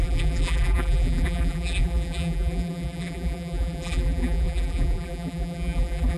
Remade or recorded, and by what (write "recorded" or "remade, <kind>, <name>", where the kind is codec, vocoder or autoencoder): remade, vocoder, BigVGAN v2